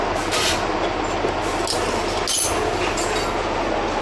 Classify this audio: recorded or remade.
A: recorded